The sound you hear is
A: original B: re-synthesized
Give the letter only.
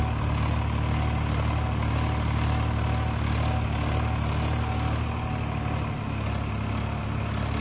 A